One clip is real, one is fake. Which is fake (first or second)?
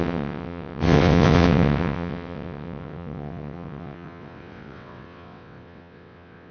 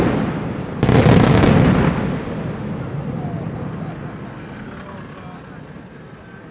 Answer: first